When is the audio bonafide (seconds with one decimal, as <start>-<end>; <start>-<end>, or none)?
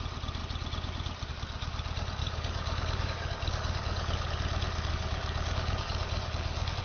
0.0-2.2; 4.3-4.9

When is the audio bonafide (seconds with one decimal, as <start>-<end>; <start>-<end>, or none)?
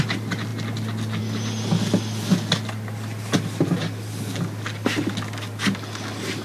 0.0-6.4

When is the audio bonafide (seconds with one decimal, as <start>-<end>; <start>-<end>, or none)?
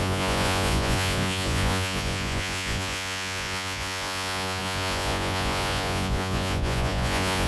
none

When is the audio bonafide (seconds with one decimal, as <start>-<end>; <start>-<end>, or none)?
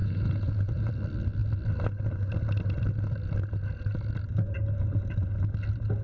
0.9-6.0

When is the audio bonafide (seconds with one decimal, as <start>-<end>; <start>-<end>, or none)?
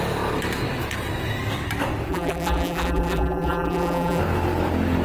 0.0-2.1; 4.2-5.0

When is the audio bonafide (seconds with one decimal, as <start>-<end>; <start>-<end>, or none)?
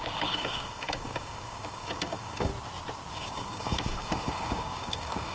2.5-3.1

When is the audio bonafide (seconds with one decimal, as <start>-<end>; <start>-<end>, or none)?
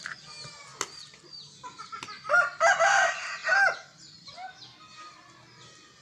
0.0-6.0